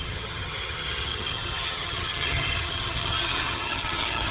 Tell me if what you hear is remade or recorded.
remade